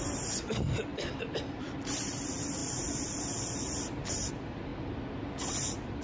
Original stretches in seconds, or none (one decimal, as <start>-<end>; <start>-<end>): 2.6-4.3; 4.7-5.4